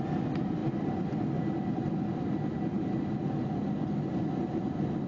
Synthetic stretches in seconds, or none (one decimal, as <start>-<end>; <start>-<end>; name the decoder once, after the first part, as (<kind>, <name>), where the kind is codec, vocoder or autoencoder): none